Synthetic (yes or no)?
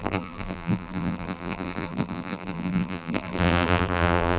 yes